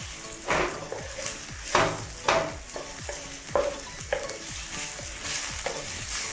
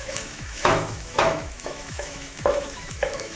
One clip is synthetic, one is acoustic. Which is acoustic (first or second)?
first